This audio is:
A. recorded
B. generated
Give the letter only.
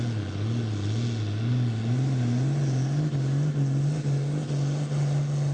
A